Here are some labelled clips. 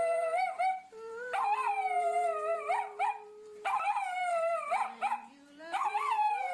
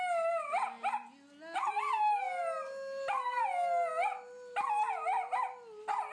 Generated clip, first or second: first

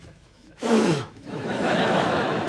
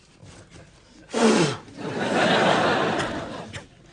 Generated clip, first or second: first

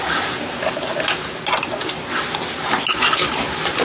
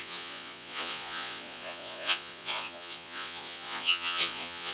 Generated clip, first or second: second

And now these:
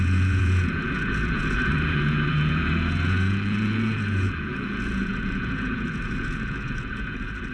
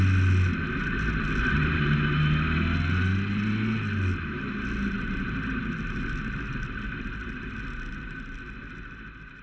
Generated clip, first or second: first